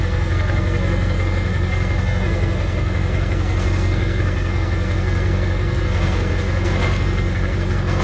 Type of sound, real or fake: fake